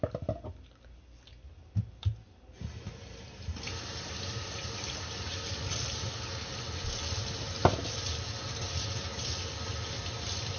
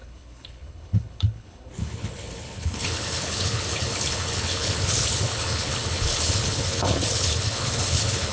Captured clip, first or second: first